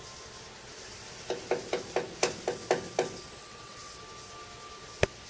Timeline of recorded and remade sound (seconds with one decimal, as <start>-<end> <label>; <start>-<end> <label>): 0.0-3.4 recorded; 3.4-4.0 remade; 4.0-5.3 recorded